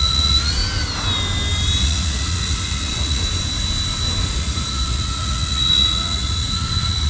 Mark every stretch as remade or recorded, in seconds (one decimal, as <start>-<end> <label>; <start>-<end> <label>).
0.0-0.6 remade; 0.6-1.8 recorded; 1.8-3.2 remade; 3.2-4.2 recorded; 4.2-7.1 remade